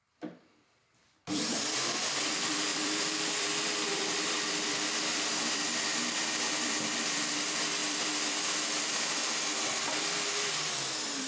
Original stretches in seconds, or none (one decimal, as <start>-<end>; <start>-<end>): none